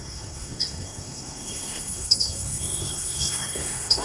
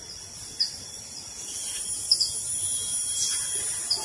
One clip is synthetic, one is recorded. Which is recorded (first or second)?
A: second